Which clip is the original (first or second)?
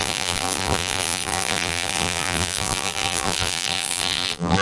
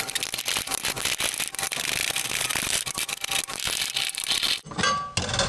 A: second